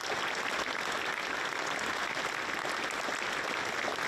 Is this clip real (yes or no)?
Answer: yes